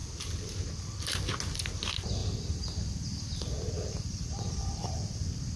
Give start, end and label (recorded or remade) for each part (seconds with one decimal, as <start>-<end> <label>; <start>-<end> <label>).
0.0-2.2 recorded; 2.2-5.6 remade